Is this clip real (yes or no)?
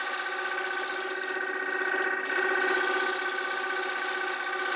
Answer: yes